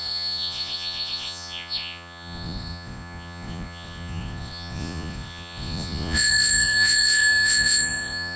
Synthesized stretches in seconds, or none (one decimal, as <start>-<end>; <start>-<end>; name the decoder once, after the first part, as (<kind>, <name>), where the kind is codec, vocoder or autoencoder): 0.0-8.4 (vocoder, Vocos)